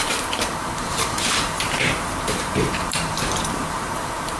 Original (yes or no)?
no